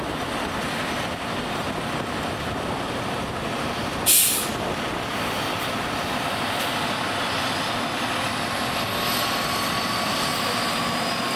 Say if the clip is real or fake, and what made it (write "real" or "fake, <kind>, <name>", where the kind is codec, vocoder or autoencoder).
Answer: real